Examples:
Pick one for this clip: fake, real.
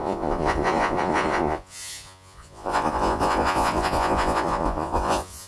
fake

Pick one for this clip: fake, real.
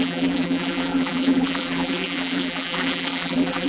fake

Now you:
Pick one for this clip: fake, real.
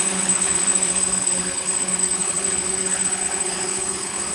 fake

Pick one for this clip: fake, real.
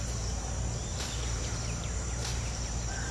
fake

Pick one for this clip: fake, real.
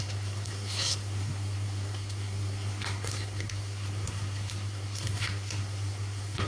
fake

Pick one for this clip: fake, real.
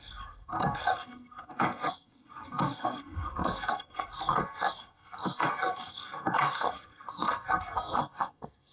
fake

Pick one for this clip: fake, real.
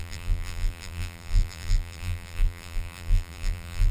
fake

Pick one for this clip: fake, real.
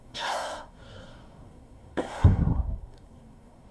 fake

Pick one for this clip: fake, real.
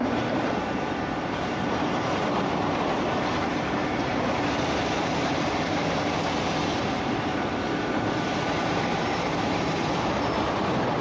fake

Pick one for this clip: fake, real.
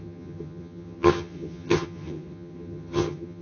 fake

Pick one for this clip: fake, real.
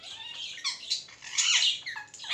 fake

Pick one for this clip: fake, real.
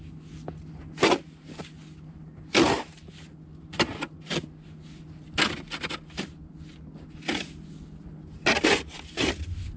real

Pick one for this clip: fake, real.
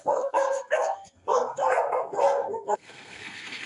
fake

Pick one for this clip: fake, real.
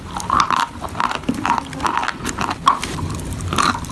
real